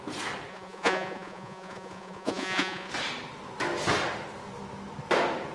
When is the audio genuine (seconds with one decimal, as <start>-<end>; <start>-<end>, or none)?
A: 0.0-0.5; 2.9-5.5